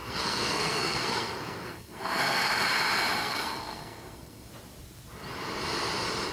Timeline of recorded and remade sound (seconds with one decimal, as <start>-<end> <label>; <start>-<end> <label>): 0.0-2.5 remade; 2.5-3.2 recorded; 3.2-4.5 remade; 4.5-6.3 recorded